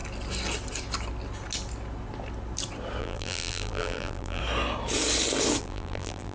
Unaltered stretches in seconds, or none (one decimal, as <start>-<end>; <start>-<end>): 0.0-3.0; 4.4-5.6